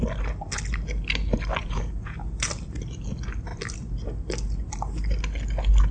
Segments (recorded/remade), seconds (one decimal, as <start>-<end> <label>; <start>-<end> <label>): 0.0-1.6 recorded; 1.6-2.4 remade; 2.4-5.9 recorded